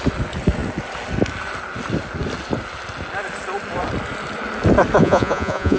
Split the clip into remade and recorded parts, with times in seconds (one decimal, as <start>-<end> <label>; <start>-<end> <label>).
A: 0.0-5.0 recorded; 5.0-5.8 remade